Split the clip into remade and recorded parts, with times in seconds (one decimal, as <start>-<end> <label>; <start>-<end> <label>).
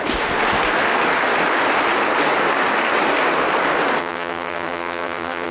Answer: 0.0-4.0 recorded; 4.0-5.5 remade